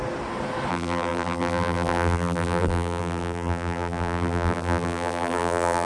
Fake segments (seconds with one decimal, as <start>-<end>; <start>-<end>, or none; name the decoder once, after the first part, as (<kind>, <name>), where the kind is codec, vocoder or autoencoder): 0.7-5.9 (vocoder, BigVGAN v2)